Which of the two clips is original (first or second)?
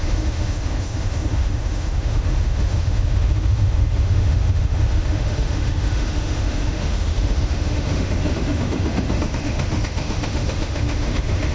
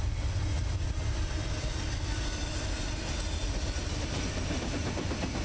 second